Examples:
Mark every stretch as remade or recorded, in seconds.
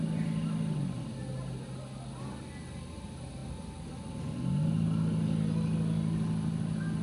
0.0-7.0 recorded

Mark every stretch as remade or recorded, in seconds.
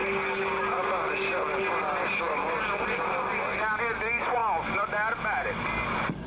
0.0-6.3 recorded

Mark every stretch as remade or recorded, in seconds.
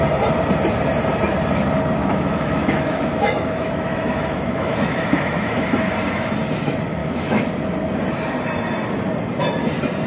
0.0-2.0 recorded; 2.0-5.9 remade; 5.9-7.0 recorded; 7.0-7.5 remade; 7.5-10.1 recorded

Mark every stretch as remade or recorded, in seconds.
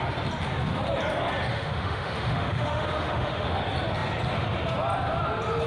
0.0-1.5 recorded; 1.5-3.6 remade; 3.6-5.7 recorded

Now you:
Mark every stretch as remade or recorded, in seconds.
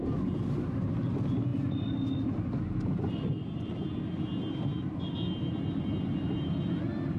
0.0-7.2 recorded